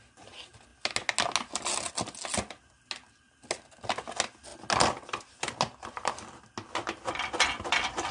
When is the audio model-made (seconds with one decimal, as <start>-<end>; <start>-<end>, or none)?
none